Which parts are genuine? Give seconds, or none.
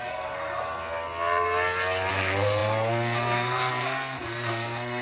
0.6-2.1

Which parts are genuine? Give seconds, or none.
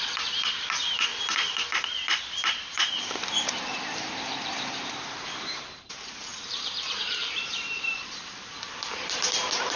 1.1-2.7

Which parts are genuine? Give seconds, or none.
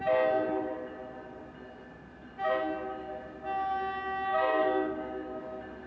0.0-4.3; 5.4-5.9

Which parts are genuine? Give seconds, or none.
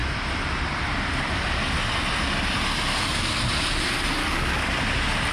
0.0-4.2; 4.7-5.3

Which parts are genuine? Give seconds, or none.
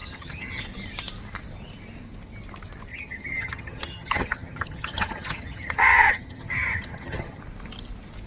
0.6-2.9; 7.4-8.3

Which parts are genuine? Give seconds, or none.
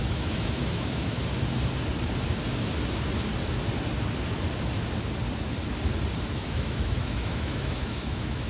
1.2-6.3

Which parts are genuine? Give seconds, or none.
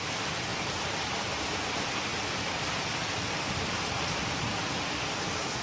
0.0-0.5; 1.4-5.6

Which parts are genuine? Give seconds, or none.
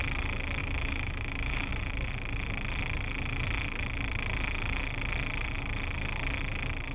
0.0-0.6; 1.7-6.9